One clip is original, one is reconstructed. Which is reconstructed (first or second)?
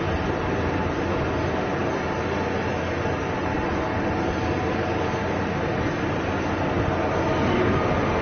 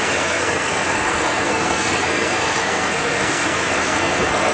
second